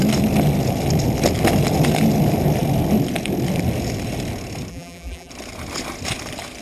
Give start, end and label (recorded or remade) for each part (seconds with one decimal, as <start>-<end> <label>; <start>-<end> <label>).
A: 0.0-4.7 recorded; 4.7-5.3 remade; 5.3-6.6 recorded